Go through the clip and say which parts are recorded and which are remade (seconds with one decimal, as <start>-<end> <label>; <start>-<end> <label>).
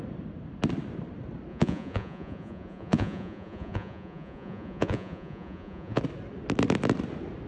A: 0.0-1.5 recorded; 1.5-6.0 remade; 6.0-7.5 recorded